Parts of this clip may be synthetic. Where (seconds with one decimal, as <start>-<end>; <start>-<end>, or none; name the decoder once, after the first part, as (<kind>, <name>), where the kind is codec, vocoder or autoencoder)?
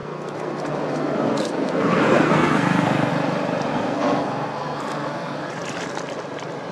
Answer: 0.0-3.1 (codec, SNAC); 3.7-5.5